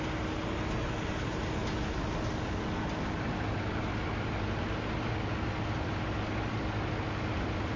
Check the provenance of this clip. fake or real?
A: real